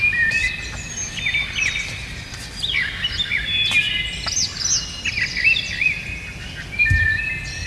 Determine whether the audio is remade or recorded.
recorded